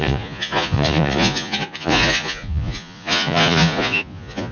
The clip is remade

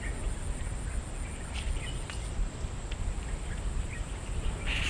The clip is recorded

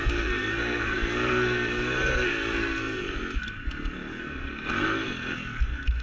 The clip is remade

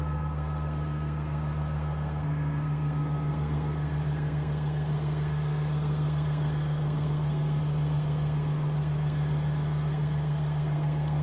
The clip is remade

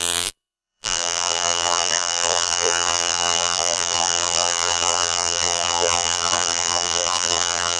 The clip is remade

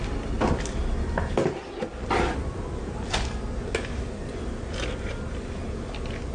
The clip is recorded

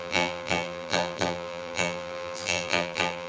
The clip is remade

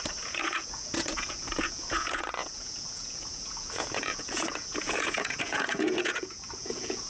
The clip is remade